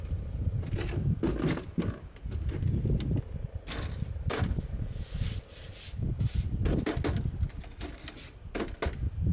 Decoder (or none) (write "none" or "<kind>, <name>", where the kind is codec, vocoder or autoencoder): none